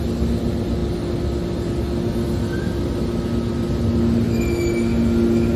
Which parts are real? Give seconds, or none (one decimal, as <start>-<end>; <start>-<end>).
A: 0.0-5.6